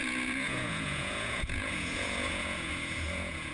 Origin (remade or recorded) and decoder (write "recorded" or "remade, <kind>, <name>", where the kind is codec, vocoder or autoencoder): remade, vocoder, Vocos